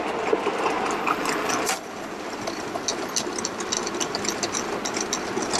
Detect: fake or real real